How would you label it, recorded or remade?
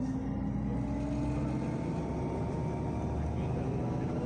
recorded